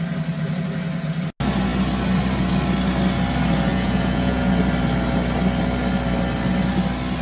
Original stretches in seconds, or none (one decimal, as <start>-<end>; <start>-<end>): 0.0-3.7; 4.5-7.2